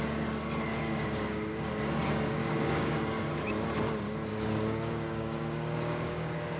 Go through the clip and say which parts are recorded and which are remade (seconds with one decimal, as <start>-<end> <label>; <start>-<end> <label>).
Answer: 0.0-0.7 recorded; 0.7-1.7 remade; 1.7-2.4 recorded; 2.4-3.5 remade; 3.5-4.3 recorded; 4.3-6.6 remade